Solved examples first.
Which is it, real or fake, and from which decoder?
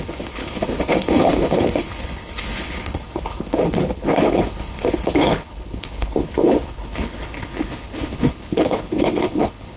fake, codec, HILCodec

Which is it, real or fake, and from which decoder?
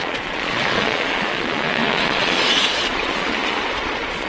fake, vocoder, Vocos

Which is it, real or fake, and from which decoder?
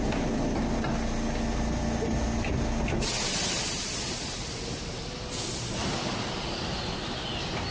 real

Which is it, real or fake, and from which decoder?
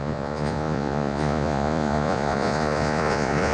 fake, vocoder, Vocos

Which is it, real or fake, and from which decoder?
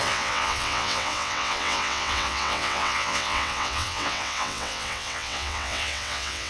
fake, vocoder, WaveNeXt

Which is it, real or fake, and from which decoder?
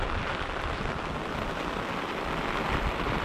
real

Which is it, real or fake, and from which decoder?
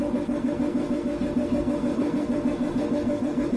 fake, codec, SNAC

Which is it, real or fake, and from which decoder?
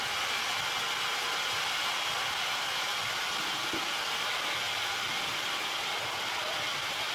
real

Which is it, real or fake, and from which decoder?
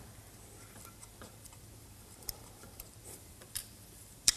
fake, vocoder, BigVGAN v2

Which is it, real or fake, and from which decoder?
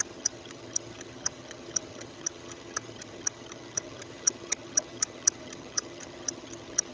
fake, vocoder, HiFi-GAN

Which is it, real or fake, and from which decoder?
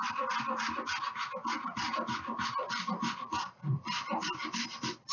real